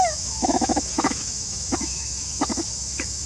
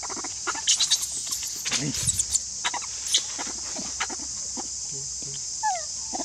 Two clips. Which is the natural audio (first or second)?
second